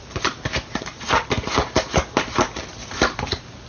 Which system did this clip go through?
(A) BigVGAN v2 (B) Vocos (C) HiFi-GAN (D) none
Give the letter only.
D